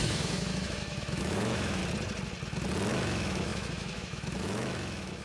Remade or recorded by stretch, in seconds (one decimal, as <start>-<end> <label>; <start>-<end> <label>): 0.0-1.8 remade; 1.8-2.9 recorded; 2.9-5.2 remade